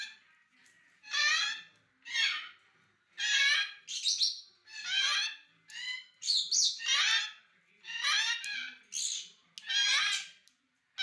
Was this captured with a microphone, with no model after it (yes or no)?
yes